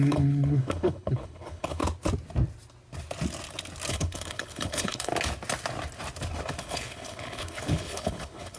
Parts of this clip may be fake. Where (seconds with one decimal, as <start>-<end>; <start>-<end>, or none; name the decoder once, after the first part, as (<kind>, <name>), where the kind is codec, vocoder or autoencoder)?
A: 0.0-1.8 (codec, HILCodec); 3.9-5.1; 6.6-8.6

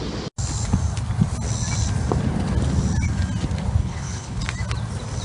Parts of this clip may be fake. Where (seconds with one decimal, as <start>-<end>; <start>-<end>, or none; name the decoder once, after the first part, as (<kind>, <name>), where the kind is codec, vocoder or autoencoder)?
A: 3.8-4.4 (codec, HILCodec)

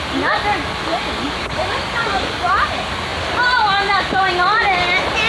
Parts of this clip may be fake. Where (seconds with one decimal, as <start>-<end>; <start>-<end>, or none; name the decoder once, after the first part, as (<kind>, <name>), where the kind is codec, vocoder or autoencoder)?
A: 0.9-2.5 (codec, DAC)

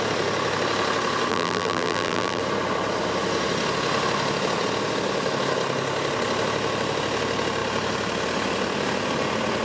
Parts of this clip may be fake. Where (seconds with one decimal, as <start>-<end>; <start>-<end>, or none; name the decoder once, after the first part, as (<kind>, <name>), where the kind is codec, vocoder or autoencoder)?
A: 1.3-2.4 (vocoder, BigVGAN v2)

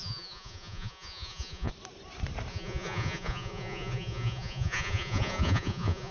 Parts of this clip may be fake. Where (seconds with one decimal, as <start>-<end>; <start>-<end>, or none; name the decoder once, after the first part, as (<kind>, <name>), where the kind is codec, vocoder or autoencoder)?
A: 0.0-1.7 (vocoder, Vocos); 2.5-6.1

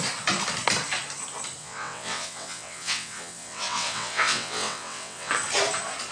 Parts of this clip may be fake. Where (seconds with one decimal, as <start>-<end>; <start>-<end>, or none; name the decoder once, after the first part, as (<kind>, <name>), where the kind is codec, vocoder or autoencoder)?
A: 1.6-5.3 (vocoder, WaveNeXt)

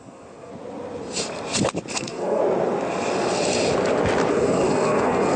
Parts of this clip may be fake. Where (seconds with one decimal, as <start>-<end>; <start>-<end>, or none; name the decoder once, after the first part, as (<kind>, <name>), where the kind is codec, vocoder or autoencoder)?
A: 0.0-0.5 (codec, SNAC); 1.9-2.4; 4.3-5.4